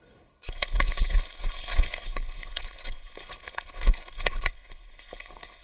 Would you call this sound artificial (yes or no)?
yes